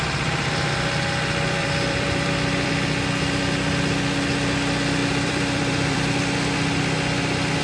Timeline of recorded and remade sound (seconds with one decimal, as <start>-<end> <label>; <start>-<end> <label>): 0.0-1.6 recorded; 1.6-2.7 remade; 2.7-5.0 recorded; 5.0-6.1 remade; 6.1-7.6 recorded